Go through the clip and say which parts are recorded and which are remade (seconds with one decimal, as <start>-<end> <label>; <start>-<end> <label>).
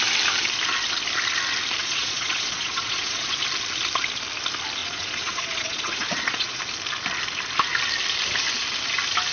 0.0-1.8 recorded; 1.8-3.4 remade; 3.4-4.8 recorded; 4.8-6.6 remade; 6.6-9.3 recorded